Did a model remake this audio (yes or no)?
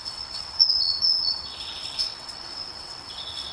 yes